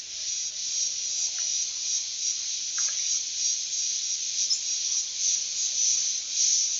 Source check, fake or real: real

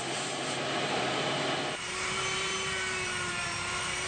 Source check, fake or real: fake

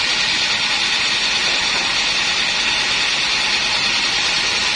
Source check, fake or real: real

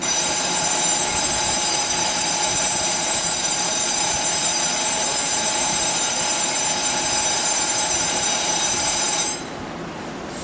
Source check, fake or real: fake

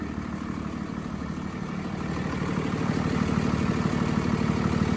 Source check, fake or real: real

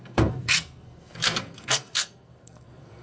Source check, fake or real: fake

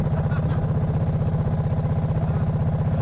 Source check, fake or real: real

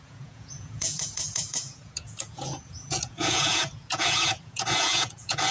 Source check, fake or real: fake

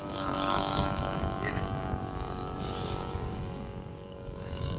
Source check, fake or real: fake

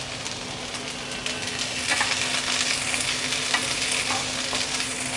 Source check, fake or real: real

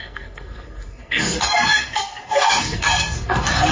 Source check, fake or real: fake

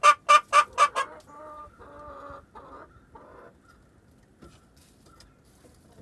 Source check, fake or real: real